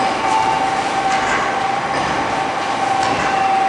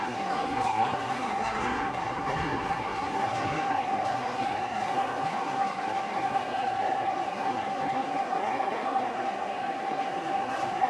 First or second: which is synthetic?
second